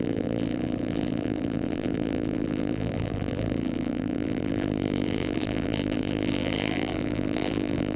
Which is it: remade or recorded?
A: remade